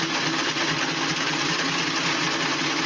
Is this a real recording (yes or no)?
yes